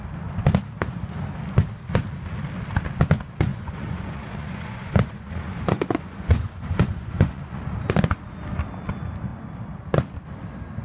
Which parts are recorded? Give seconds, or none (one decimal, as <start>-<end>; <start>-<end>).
0.0-3.5; 7.6-10.8